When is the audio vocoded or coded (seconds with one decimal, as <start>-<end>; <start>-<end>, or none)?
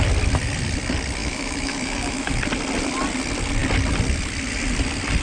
1.2-2.4